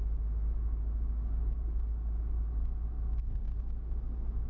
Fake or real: real